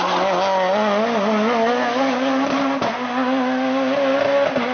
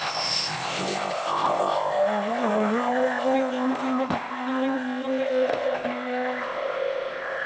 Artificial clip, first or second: second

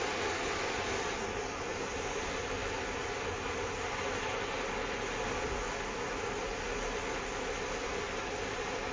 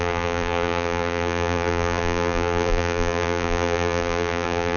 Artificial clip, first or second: second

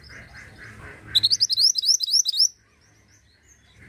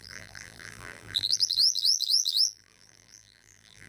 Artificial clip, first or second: second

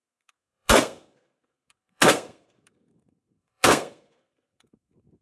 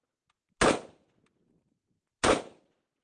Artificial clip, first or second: first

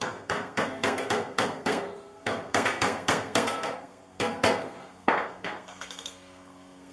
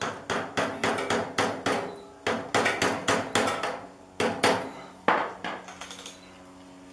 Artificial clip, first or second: first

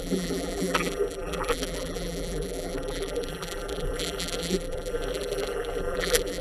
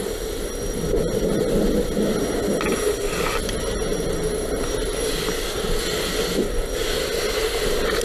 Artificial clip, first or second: first